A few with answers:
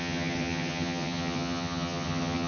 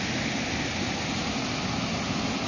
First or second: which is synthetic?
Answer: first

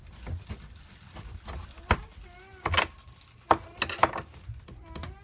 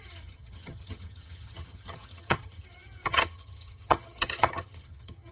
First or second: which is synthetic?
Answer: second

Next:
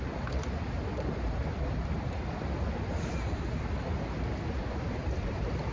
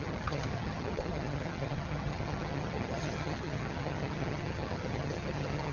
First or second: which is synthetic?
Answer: second